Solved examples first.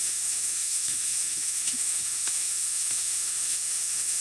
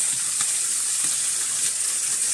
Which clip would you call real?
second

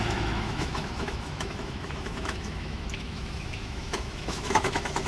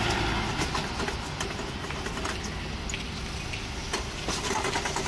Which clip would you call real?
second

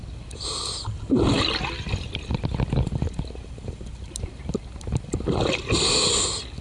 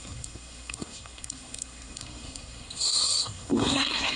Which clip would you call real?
first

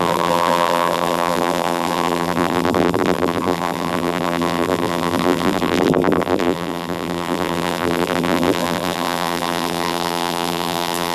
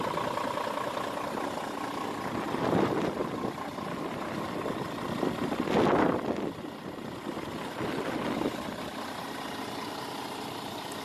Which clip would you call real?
second